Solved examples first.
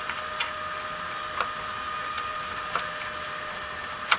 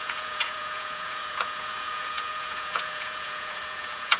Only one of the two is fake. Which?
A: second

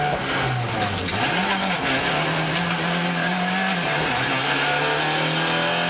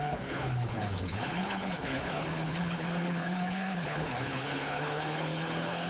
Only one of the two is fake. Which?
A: second